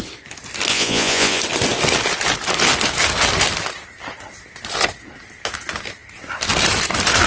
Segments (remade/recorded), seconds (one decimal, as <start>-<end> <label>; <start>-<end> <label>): 0.0-0.7 recorded; 0.7-1.4 remade; 1.4-7.3 recorded